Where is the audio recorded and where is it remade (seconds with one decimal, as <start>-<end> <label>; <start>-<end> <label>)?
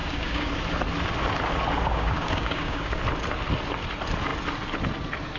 0.0-0.5 remade; 0.5-1.9 recorded; 1.9-3.0 remade; 3.0-5.4 recorded